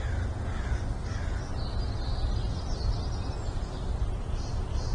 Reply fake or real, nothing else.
real